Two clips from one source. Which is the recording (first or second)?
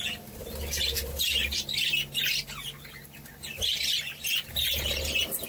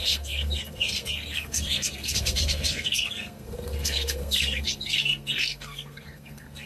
first